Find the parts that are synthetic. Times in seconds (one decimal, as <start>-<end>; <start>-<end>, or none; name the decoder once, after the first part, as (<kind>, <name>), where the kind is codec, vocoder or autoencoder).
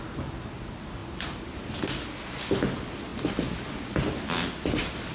1.0-1.7 (vocoder, BigVGAN v2)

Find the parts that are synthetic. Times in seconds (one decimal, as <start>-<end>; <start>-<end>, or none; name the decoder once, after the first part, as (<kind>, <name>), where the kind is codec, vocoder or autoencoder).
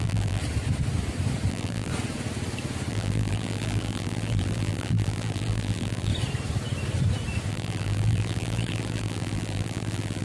0.0-0.4 (vocoder, BigVGAN v2); 1.5-1.9; 2.9-6.1; 7.5-10.2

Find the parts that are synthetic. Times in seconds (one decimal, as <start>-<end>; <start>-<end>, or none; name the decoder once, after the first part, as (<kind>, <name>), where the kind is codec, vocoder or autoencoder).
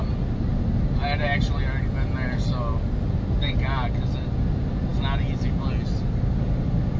none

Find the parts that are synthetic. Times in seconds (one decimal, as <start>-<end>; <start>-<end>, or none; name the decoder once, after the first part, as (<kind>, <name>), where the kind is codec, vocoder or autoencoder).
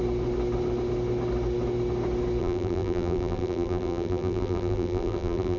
2.4-5.6 (vocoder, BigVGAN v2)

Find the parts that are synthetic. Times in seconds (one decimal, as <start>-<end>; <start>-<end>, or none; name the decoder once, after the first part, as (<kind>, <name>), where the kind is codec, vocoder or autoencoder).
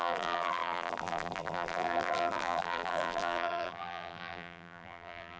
0.0-5.4 (vocoder, BigVGAN v2)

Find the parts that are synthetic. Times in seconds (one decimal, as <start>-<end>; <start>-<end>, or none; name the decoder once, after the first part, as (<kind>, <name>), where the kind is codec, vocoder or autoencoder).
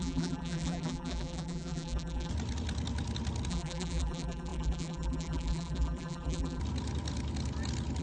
0.0-2.3 (vocoder, BigVGAN v2); 3.5-6.6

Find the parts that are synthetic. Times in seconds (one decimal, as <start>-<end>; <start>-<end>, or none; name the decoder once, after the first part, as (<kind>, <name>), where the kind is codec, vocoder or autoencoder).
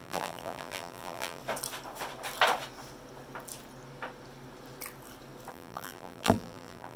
0.0-1.4 (vocoder, BigVGAN v2); 5.5-7.0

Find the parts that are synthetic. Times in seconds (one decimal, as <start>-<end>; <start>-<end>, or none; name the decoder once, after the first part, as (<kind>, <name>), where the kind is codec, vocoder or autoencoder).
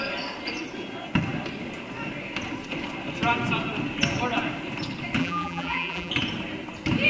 5.2-6.1 (vocoder, BigVGAN v2)